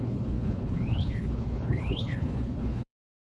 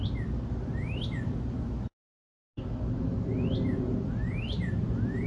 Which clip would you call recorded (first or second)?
second